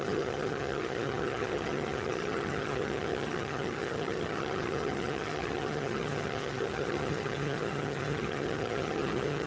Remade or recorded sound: remade